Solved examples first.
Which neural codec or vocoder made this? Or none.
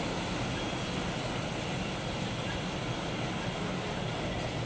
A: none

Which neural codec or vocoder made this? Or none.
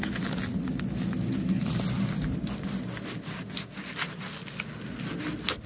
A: none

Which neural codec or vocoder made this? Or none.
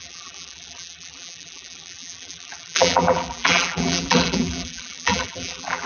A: vocoder, BigVGAN v2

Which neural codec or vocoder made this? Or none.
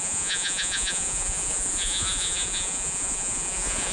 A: vocoder, Vocos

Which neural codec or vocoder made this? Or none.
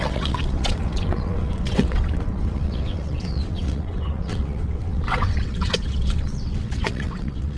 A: vocoder, WaveNeXt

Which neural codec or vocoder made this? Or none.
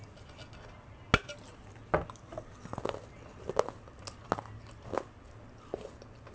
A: none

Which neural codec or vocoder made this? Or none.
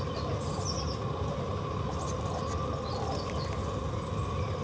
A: none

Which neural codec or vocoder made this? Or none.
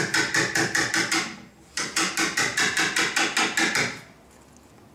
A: none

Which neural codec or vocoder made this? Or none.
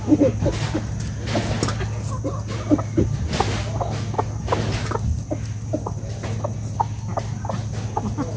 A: none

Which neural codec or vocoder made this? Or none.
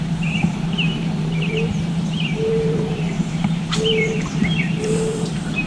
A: vocoder, BigVGAN v2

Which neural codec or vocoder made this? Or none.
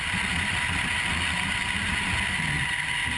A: none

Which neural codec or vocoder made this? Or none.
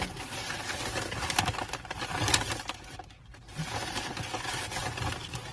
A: none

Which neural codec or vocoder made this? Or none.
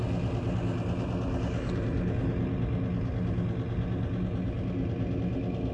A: none